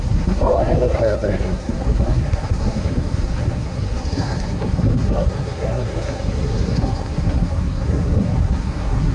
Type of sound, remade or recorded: remade